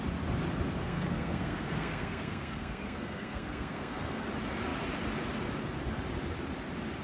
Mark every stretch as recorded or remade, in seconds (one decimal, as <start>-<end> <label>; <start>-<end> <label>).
0.0-0.8 recorded; 0.8-4.3 remade; 4.3-7.0 recorded